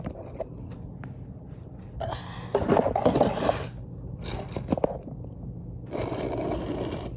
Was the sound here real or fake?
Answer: real